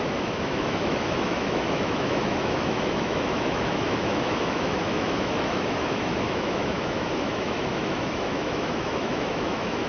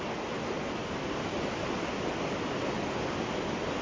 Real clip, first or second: second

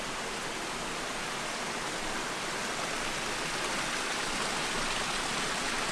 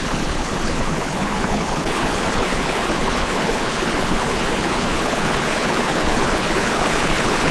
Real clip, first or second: first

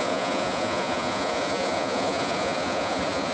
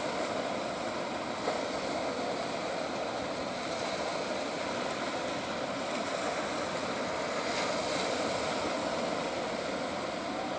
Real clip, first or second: second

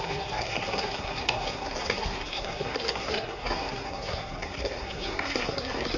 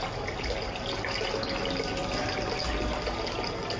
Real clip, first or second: second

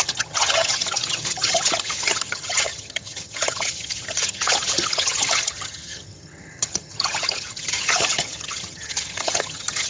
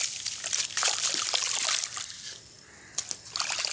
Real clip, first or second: second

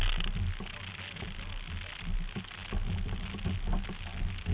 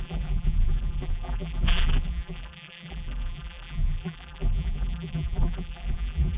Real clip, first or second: first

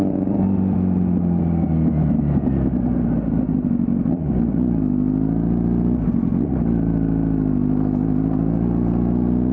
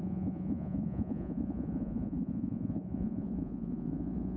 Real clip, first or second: first